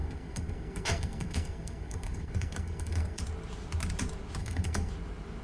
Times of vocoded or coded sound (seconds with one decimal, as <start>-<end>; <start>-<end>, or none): 0.0-3.2; 4.4-4.9